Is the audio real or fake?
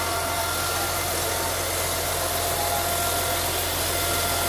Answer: real